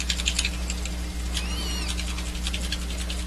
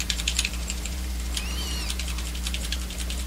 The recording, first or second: first